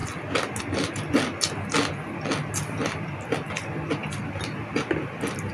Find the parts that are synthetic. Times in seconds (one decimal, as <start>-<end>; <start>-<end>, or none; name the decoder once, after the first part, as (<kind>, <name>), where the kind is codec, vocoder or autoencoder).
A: none